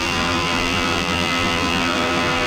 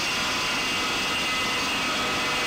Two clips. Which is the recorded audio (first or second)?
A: second